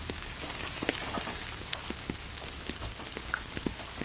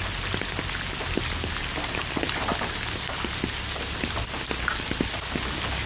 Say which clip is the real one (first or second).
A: second